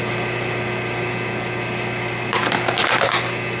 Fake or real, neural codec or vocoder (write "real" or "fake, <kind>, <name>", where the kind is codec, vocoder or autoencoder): real